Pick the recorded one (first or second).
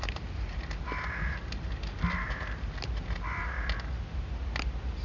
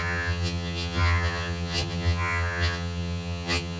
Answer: first